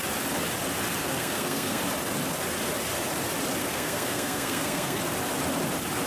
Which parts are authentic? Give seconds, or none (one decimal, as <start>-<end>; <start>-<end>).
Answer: 0.0-1.0; 1.8-3.6; 5.0-6.1